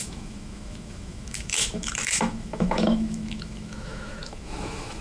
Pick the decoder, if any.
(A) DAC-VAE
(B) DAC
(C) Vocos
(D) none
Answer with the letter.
A